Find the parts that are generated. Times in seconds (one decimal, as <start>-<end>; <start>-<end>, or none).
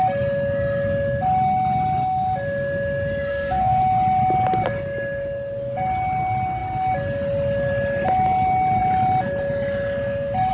3.3-3.8